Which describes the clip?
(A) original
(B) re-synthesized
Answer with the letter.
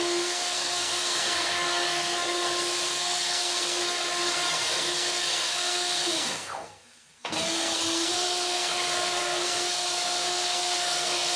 B